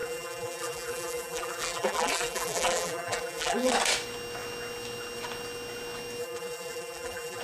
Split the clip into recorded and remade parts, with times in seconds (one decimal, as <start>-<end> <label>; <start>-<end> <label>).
0.0-3.7 remade; 3.7-6.2 recorded; 6.2-7.4 remade